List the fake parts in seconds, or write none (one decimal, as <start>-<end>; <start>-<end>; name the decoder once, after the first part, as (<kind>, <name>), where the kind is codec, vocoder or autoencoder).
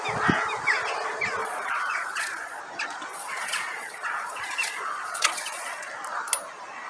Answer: 1.4-2.6 (vocoder, Vocos); 3.1-5.9